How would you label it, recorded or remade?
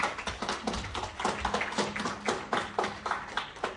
recorded